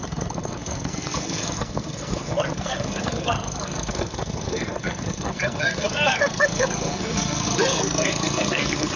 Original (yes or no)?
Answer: no